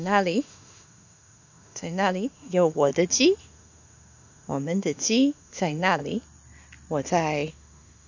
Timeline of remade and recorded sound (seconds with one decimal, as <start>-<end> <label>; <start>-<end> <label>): 0.0-2.9 remade; 2.9-3.4 recorded; 3.4-6.0 remade; 6.0-7.5 recorded; 7.5-8.1 remade